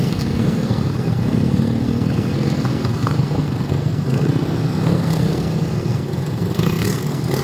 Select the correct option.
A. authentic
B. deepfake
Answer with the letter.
B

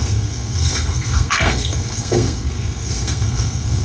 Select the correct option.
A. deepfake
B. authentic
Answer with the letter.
A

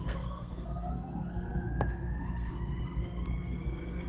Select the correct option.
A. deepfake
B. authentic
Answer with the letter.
A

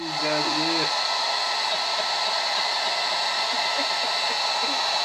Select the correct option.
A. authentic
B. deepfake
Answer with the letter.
A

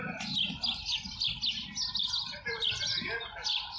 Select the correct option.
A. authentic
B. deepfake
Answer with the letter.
A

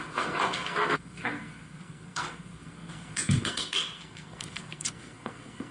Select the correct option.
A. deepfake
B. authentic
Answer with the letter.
A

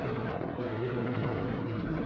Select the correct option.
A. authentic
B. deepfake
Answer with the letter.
B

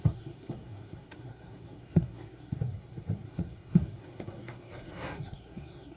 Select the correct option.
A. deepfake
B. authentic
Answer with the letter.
A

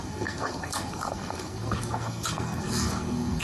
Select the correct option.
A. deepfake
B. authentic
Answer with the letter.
A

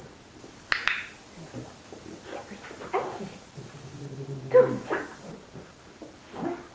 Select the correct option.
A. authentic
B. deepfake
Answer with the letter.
A